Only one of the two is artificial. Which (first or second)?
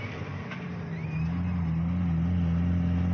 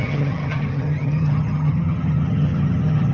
second